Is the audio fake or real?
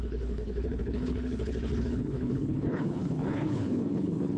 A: fake